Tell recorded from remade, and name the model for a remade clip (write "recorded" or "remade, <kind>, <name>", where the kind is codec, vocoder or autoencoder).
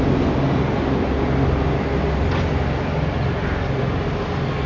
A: recorded